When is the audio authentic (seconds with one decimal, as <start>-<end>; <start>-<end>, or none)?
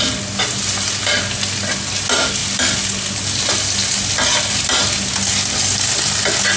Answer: 0.0-6.6